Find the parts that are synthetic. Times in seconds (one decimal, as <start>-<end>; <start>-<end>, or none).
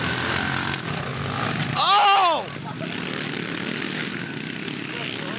none